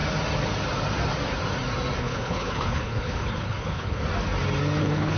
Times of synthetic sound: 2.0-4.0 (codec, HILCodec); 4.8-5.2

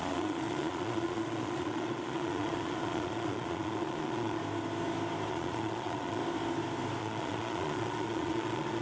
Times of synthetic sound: 0.0-4.4 (vocoder, Vocos); 5.3-6.2; 7.0-8.8

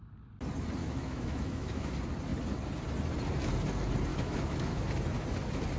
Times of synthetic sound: 0.8-1.9 (autoencoder, DAC-VAE); 4.1-4.8

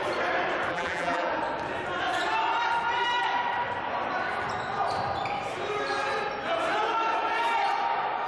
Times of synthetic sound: 0.7-1.3 (vocoder, BigVGAN v2)

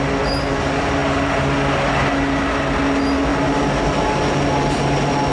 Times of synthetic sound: none

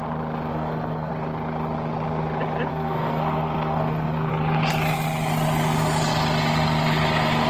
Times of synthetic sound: 0.5-1.1 (codec, SNAC); 2.7-4.3